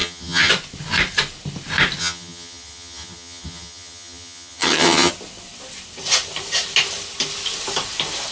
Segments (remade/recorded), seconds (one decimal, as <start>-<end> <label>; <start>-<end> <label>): 0.0-0.5 remade; 0.5-2.0 recorded; 2.0-5.1 remade; 5.1-8.3 recorded